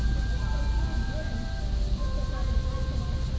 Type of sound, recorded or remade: recorded